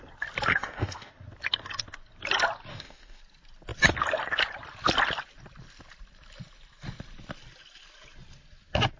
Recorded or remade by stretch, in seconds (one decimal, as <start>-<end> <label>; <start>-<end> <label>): 0.0-0.5 recorded; 0.5-1.1 remade; 1.1-2.7 recorded; 2.7-3.2 remade; 3.2-9.0 recorded

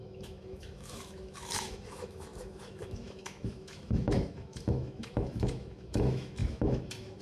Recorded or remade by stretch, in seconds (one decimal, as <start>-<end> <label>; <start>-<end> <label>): 0.0-7.2 remade

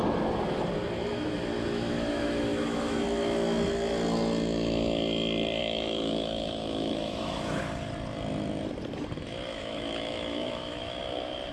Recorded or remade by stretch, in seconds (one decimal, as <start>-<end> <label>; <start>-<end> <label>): 0.0-1.1 recorded; 1.1-3.0 remade; 3.0-5.6 recorded; 5.6-7.6 remade; 7.6-9.5 recorded; 9.5-11.0 remade; 11.0-11.5 recorded